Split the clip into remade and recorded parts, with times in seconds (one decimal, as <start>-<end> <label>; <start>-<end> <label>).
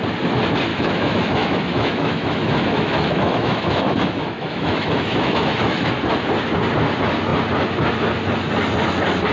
0.0-0.7 recorded; 0.7-5.9 remade; 5.9-9.3 recorded